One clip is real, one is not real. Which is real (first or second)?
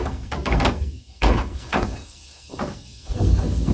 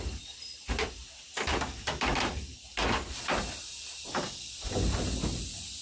second